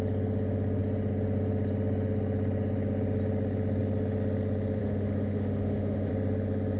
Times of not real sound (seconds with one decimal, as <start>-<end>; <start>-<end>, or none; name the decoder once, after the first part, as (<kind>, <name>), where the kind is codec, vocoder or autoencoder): 4.8-6.1 (autoencoder, DAC-VAE)